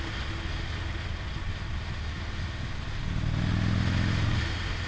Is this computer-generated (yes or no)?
no